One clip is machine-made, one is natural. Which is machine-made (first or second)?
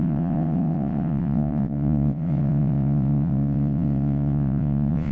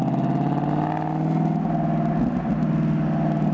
first